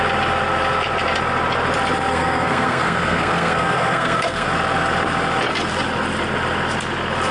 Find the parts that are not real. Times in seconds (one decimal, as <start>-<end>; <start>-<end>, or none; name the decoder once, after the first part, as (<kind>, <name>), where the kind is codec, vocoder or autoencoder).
2.1-4.5 (codec, SNAC)